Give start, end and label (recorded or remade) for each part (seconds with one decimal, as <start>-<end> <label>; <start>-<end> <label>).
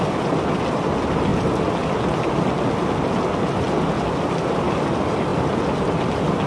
0.0-6.5 recorded